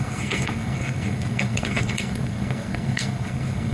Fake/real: fake